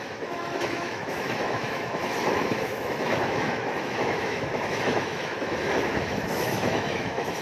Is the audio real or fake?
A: fake